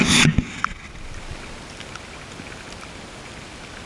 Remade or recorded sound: recorded